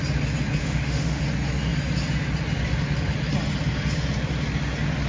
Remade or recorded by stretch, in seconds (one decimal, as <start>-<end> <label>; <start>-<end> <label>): 0.0-0.6 recorded; 0.6-1.2 remade; 1.2-5.1 recorded